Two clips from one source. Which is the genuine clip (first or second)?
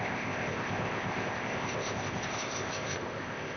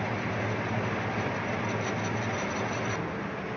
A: second